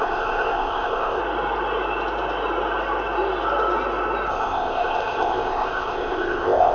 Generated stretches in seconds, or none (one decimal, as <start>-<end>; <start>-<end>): 0.0-1.2; 4.3-6.7